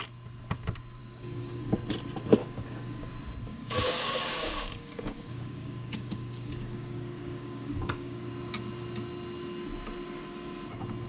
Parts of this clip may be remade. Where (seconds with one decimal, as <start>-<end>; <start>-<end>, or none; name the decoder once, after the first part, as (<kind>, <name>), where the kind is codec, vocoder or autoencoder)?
1.0-1.7 (codec, DAC); 2.4-3.1; 3.5-8.3

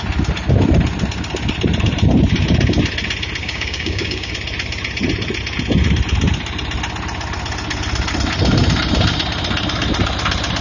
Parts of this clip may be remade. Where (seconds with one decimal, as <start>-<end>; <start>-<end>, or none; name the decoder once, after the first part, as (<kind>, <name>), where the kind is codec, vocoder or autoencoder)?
3.4-4.3 (codec, DAC)